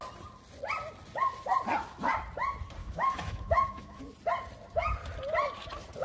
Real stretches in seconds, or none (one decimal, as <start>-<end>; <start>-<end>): 0.0-2.8; 4.0-6.0